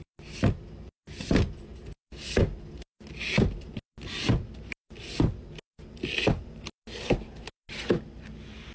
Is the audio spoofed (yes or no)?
no